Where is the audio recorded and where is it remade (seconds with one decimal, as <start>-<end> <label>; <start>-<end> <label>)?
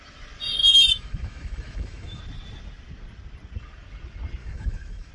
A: 0.0-0.6 recorded; 0.6-2.2 remade; 2.2-4.4 recorded; 4.4-5.1 remade